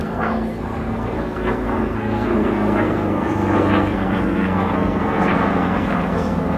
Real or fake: fake